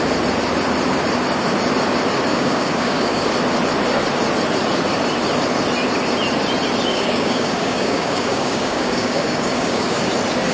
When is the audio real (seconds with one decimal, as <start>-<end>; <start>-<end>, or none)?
0.0-2.3; 3.3-6.9; 10.1-10.5